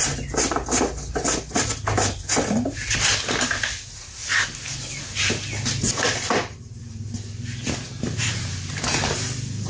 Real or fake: real